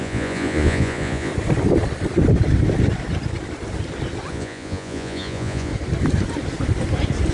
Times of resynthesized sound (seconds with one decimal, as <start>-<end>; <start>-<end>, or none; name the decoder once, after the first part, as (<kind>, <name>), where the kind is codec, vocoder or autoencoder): 0.0-1.3 (vocoder, Vocos); 4.3-5.7